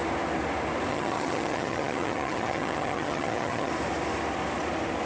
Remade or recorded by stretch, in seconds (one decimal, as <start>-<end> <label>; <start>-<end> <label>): 0.0-0.9 recorded; 0.9-3.7 remade; 3.7-5.0 recorded